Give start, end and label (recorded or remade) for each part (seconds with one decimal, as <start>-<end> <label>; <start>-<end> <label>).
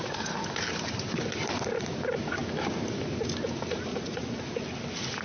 0.0-3.9 recorded; 3.9-4.6 remade; 4.6-5.2 recorded